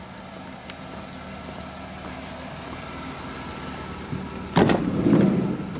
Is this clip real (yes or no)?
yes